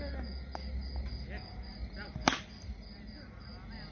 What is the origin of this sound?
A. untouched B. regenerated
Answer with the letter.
A